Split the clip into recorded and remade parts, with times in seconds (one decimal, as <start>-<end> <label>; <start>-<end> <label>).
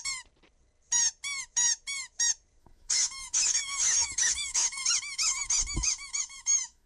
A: 0.0-2.6 recorded; 2.6-6.9 remade